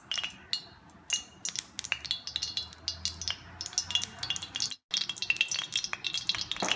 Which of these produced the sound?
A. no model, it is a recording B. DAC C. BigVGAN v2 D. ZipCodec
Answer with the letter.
A